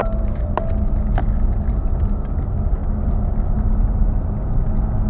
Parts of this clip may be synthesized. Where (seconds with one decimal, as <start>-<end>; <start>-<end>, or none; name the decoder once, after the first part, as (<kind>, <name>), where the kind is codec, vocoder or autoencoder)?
1.2-2.2 (vocoder, BigVGAN v2); 2.8-3.7